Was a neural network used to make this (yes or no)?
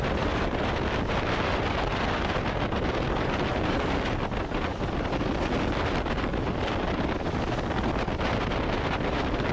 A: no